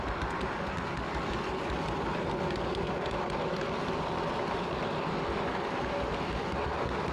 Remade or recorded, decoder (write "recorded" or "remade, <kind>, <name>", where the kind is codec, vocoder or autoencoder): recorded